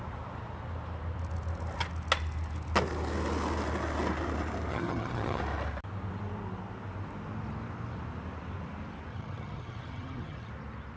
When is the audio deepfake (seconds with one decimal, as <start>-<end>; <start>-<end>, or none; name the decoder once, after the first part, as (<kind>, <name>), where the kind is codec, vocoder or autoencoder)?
4.7-5.4 (vocoder, HiFi-GAN); 9.1-10.5